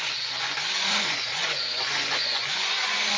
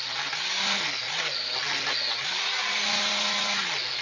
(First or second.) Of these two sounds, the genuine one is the second